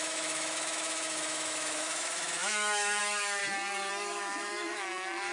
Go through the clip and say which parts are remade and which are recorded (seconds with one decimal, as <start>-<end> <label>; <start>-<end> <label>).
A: 0.0-3.4 remade; 3.4-3.9 recorded; 3.9-5.3 remade